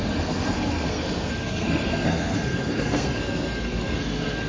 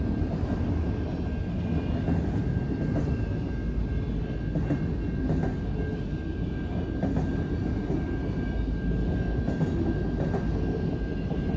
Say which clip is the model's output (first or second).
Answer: first